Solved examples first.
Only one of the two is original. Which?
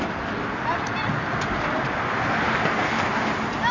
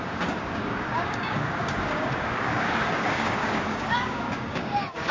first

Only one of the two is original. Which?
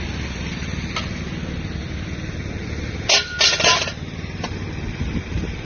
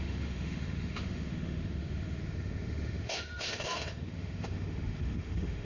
first